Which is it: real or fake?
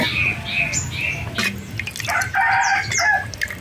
real